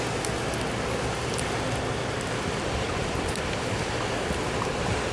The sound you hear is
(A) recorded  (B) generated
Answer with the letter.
A